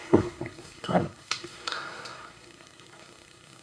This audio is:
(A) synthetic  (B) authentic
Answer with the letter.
A